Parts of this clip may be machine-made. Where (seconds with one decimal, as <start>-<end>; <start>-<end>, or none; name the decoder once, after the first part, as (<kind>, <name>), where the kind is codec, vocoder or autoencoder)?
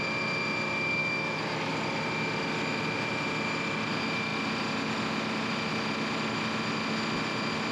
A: 1.0-1.7 (autoencoder, DAC-VAE)